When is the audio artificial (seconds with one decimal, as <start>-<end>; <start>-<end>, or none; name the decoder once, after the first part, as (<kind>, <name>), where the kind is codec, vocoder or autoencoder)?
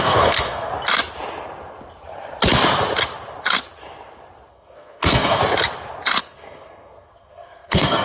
0.0-0.7 (codec, SNAC); 4.5-5.4; 6.2-8.0